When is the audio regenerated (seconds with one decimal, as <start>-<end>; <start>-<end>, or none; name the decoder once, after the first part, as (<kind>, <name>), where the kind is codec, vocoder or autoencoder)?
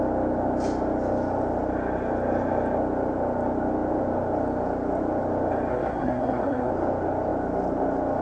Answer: 5.7-6.7 (codec, SNAC)